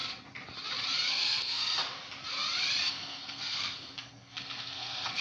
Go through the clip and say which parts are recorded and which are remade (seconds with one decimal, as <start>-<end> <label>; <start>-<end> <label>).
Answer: 0.0-1.1 recorded; 1.1-1.6 remade; 1.6-2.9 recorded; 2.9-5.2 remade